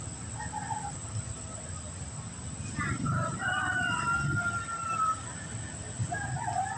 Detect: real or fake real